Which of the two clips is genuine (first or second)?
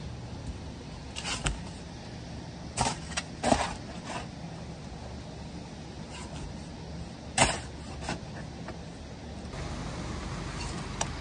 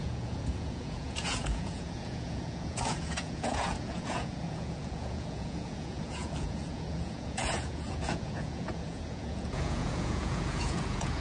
first